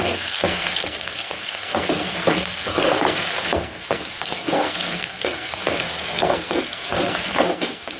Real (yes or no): no